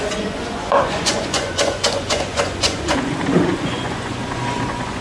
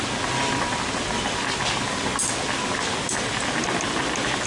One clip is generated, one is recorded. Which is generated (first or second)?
first